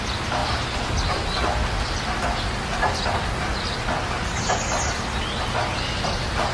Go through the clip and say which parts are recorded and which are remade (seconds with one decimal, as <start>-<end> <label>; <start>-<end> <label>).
0.0-6.5 recorded